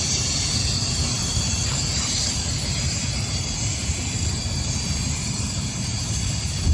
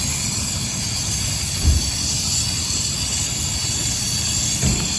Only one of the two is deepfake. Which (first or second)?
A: first